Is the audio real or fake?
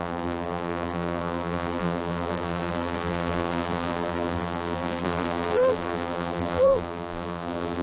fake